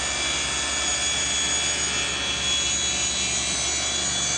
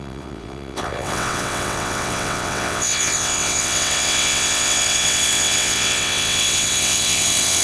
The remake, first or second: second